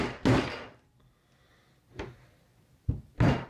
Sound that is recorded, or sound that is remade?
recorded